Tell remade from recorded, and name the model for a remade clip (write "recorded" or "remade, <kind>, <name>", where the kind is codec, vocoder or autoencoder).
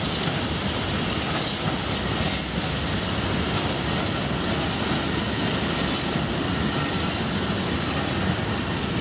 recorded